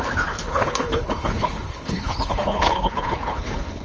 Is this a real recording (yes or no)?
no